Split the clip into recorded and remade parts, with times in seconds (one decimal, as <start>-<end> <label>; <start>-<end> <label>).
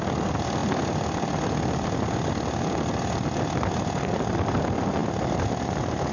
0.0-6.1 recorded